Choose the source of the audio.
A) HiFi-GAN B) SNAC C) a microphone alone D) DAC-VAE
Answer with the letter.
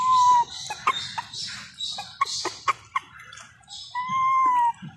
C